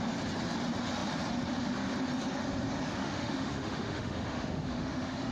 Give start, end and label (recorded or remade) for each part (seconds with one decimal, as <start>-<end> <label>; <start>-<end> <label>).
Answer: 0.0-3.0 recorded; 3.0-5.3 remade